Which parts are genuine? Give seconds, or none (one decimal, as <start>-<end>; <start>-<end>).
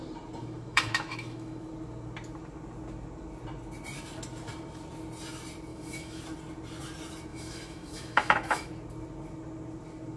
0.0-0.4; 1.6-5.7; 6.2-7.3; 8.7-10.2